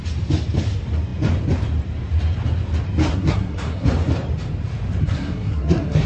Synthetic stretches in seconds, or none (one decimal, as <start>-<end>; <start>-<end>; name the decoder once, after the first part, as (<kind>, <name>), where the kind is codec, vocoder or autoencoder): 3.1-3.9 (codec, SNAC); 5.0-6.1